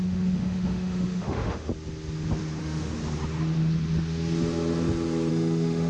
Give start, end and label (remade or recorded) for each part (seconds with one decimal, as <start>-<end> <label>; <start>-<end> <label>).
0.0-1.7 remade; 1.7-2.6 recorded; 2.6-3.0 remade; 3.0-5.3 recorded; 5.3-5.9 remade